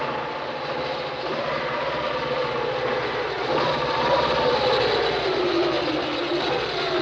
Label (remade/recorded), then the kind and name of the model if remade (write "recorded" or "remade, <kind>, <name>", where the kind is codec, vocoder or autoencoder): recorded